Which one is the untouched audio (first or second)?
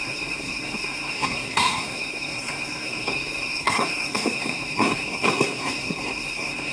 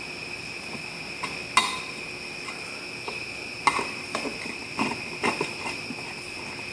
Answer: second